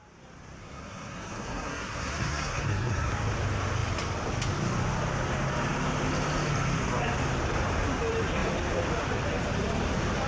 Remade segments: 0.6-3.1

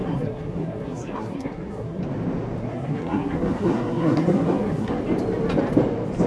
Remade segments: 0.0-2.0; 2.6-5.0

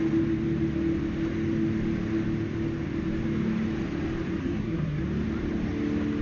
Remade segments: 4.4-5.0

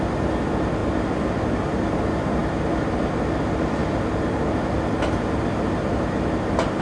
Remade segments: none

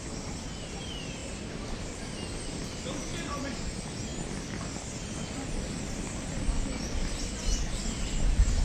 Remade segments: none